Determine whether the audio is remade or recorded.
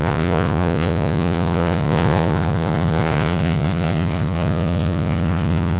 remade